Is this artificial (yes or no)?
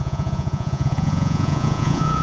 yes